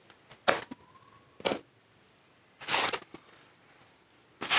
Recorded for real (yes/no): yes